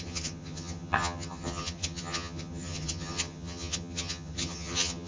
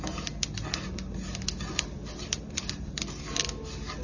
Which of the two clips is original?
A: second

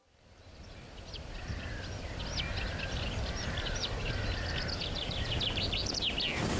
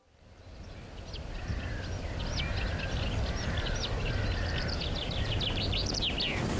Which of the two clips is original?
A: second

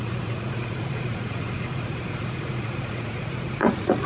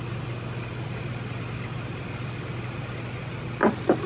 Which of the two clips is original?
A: second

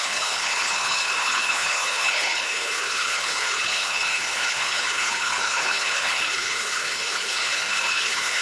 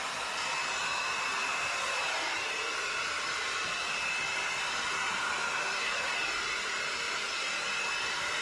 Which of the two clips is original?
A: second